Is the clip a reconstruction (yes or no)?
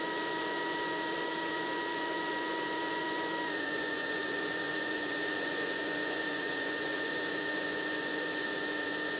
yes